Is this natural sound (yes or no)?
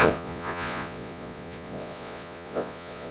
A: no